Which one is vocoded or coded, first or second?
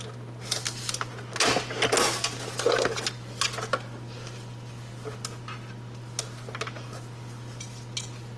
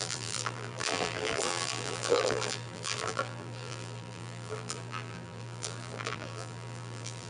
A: second